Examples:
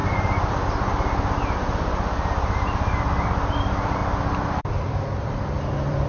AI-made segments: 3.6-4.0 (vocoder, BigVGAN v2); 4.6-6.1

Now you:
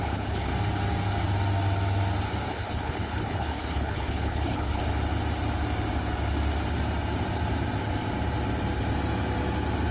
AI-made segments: 0.0-0.5 (codec, HILCodec); 2.5-4.8